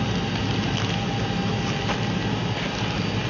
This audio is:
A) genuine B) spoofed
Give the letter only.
A